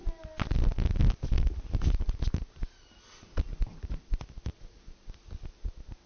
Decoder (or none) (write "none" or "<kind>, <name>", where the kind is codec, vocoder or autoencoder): none